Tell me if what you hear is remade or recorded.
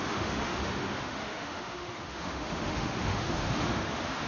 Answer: remade